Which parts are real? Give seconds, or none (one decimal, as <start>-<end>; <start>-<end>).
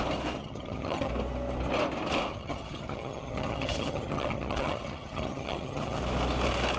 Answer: 0.0-0.4; 1.1-2.3; 6.0-6.8